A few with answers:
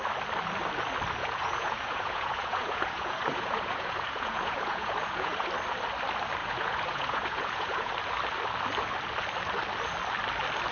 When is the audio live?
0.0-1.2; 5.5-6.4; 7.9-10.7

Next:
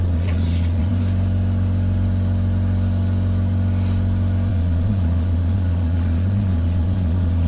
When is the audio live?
0.9-4.5

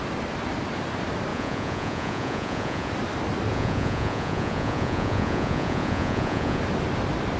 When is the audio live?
0.0-1.3; 2.9-3.5; 6.6-7.4